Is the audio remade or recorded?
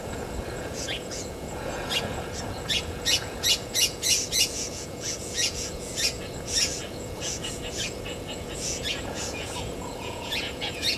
remade